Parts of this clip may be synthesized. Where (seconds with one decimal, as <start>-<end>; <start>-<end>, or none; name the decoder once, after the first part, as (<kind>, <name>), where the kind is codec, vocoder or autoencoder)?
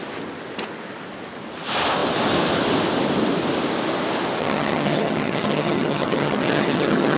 4.4-7.2 (vocoder, HiFi-GAN)